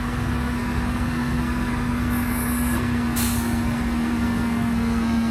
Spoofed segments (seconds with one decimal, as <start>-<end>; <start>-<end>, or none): 0.0-5.3